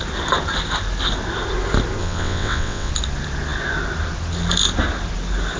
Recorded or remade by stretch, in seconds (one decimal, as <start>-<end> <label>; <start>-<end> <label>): 0.0-2.0 recorded; 2.0-2.9 remade; 2.9-5.6 recorded